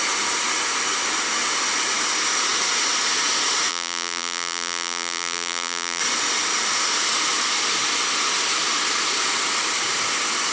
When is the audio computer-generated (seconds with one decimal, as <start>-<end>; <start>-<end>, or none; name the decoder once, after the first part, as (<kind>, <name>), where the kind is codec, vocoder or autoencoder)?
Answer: 3.7-6.0 (vocoder, BigVGAN v2)